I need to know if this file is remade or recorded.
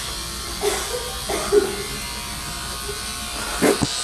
recorded